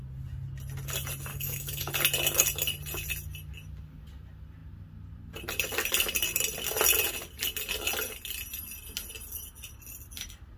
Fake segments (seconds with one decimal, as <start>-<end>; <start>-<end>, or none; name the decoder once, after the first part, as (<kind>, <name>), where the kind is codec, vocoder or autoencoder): 1.3-1.9 (codec, DAC)